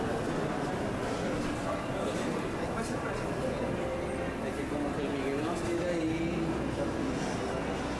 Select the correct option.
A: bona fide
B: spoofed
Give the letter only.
A